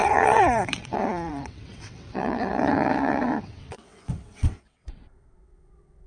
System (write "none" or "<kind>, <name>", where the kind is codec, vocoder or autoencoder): vocoder, WaveNeXt